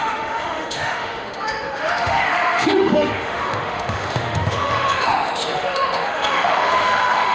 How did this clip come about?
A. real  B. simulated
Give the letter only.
B